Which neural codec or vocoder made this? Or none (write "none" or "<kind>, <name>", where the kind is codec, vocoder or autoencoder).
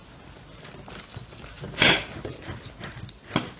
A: none